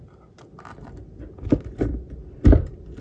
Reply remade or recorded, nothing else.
recorded